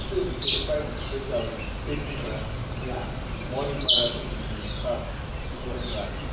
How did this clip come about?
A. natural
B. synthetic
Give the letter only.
A